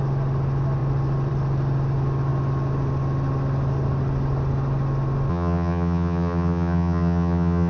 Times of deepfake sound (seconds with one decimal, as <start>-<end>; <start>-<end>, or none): 5.3-7.7